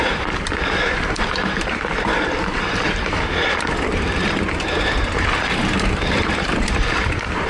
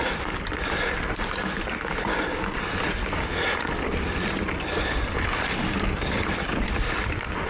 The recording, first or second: second